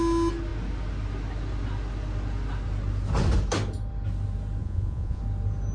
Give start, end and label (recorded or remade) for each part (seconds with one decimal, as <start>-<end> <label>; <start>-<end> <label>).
0.0-4.6 recorded; 4.6-5.2 remade; 5.2-5.7 recorded